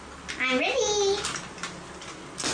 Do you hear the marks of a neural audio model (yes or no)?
no